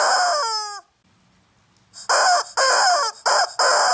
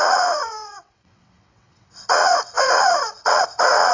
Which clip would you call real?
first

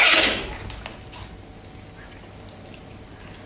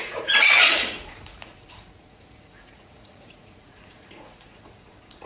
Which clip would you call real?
first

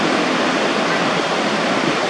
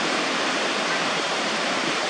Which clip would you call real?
first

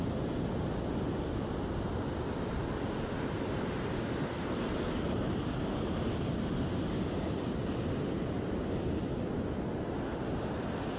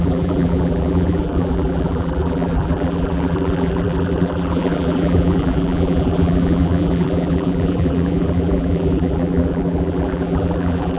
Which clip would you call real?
first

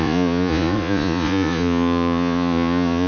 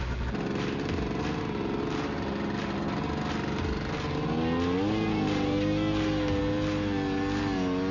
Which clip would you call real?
second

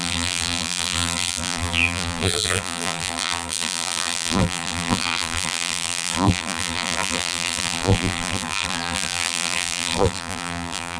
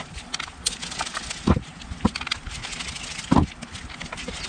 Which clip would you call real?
second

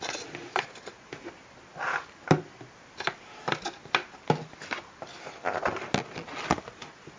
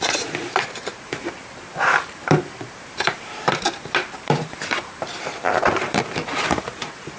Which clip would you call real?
first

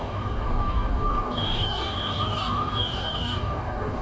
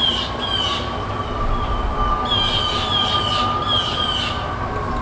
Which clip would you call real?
second